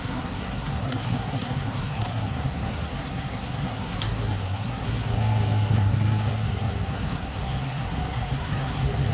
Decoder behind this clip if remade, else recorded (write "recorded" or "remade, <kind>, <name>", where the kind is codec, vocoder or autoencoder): remade, codec, SNAC